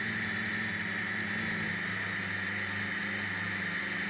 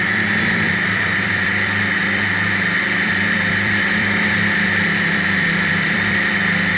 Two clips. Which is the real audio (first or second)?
first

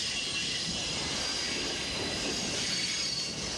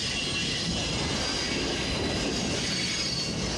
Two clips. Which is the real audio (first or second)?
second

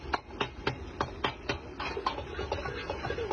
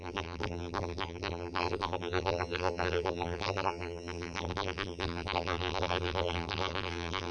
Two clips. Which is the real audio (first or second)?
first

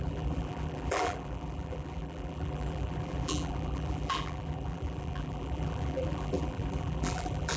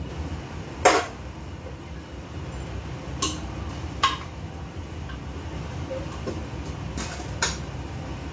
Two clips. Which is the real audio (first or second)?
second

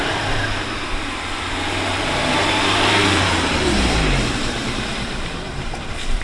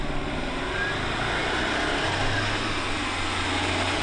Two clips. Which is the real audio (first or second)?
second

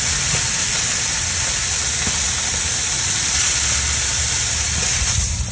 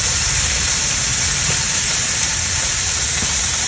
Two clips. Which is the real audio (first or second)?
first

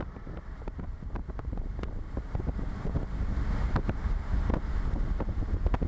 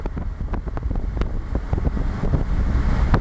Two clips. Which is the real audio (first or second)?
second